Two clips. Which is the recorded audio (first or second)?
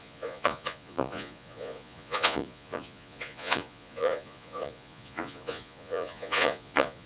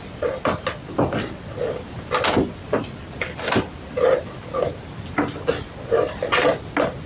second